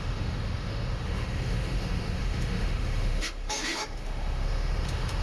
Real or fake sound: fake